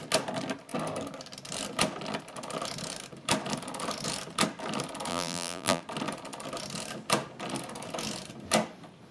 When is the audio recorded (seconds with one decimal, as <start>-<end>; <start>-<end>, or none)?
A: 0.0-5.1; 5.8-9.1